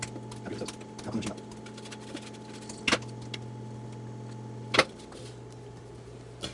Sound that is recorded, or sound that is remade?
recorded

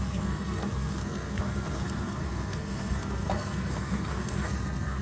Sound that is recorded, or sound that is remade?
remade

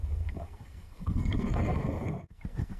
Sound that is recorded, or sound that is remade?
remade